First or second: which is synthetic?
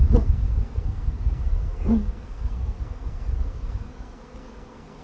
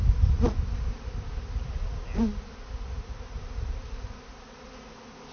first